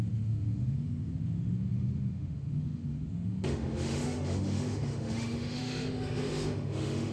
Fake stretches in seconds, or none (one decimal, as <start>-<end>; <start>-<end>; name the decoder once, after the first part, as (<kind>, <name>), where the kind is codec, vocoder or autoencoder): 0.0-7.1 (autoencoder, DAC-VAE)